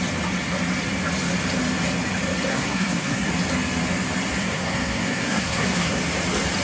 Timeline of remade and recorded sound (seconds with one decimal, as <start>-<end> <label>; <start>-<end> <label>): 0.0-2.5 recorded; 2.5-3.3 remade; 3.3-4.4 recorded; 4.4-6.0 remade; 6.0-6.6 recorded